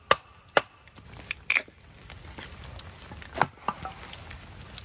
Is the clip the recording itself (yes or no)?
yes